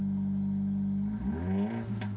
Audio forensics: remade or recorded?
recorded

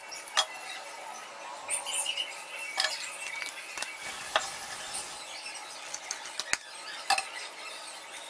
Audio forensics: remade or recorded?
recorded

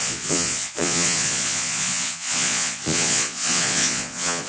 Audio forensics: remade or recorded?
remade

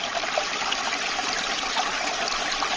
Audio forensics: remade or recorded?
recorded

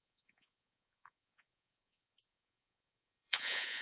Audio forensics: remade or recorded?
remade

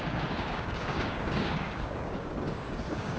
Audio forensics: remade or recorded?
remade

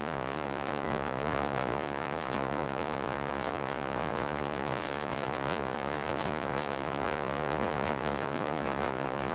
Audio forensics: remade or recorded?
remade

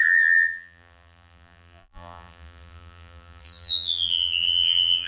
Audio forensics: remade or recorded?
remade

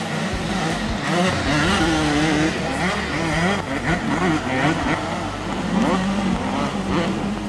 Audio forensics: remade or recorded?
recorded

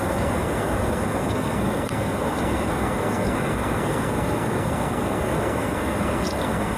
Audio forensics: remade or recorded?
remade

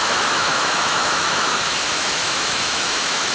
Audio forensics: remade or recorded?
remade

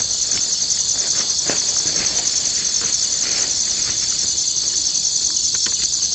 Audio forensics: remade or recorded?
recorded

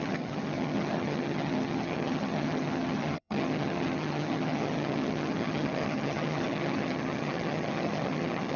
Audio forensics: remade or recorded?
remade